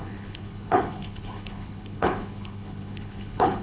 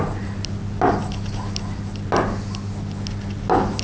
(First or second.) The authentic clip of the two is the second